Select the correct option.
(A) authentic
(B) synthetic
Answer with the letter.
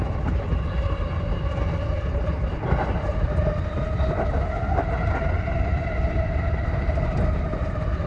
A